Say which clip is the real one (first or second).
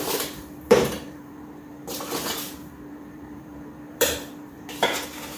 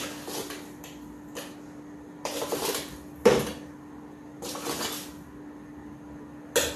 second